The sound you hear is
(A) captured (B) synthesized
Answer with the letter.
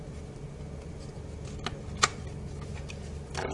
A